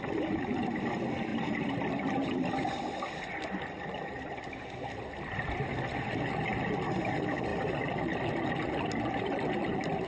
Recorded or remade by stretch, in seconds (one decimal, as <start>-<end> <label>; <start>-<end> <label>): 0.0-1.3 recorded; 1.3-4.5 remade; 4.5-10.1 recorded